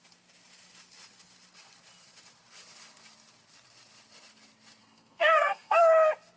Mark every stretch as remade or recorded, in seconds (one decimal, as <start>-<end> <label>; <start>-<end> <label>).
0.0-4.8 recorded; 4.8-5.8 remade; 5.8-6.4 recorded